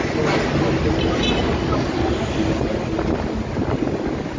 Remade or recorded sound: recorded